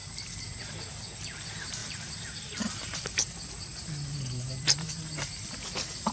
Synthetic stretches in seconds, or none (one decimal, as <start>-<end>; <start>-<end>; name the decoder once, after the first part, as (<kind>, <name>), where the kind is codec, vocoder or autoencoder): 0.0-0.6 (vocoder, BigVGAN v2); 1.8-5.5